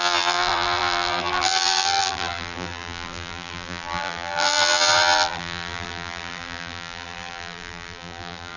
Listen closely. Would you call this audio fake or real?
fake